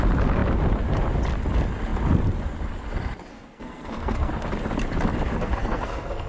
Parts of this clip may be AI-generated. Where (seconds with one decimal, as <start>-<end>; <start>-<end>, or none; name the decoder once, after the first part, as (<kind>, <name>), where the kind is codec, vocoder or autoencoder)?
3.3-4.3 (codec, SNAC); 5.3-6.3